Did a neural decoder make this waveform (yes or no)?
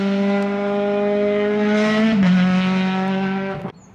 no